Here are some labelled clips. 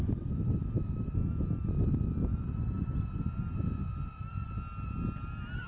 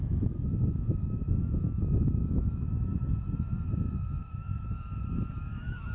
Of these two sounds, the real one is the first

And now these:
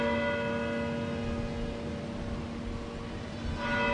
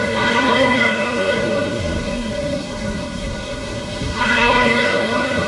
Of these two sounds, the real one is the first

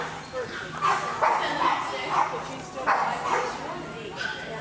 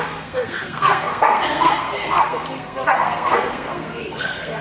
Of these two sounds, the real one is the first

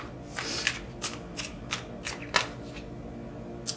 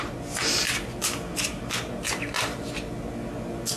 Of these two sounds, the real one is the first